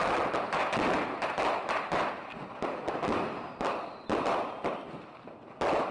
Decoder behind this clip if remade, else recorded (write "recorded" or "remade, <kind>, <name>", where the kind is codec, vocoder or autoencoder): recorded